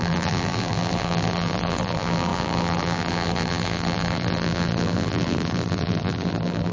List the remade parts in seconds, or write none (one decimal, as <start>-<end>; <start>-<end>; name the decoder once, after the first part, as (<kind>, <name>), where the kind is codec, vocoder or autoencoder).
0.0-6.7 (vocoder, BigVGAN v2)